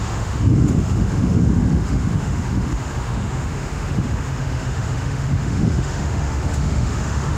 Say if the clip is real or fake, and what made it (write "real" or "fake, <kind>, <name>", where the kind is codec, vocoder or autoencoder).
fake, autoencoder, DAC-VAE